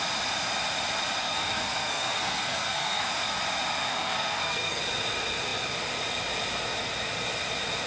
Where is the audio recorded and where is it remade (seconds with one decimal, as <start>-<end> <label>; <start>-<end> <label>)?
0.0-1.2 recorded; 1.2-3.1 remade; 3.1-3.8 recorded; 3.8-4.8 remade; 4.8-7.9 recorded